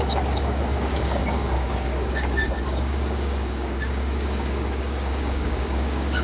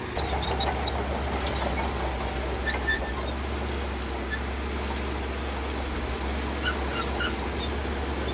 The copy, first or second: first